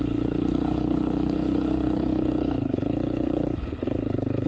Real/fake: fake